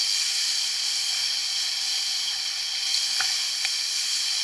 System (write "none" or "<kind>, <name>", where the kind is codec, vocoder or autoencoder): none